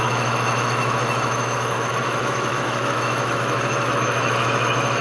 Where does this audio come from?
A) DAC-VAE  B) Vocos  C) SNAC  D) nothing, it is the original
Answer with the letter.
A